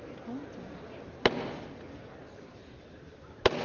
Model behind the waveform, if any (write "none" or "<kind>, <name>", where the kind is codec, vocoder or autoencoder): none